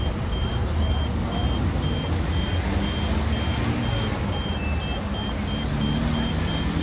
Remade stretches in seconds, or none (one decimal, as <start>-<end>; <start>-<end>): none